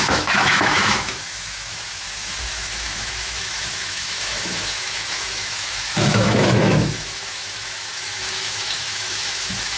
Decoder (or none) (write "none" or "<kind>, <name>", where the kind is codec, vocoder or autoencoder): autoencoder, DAC-VAE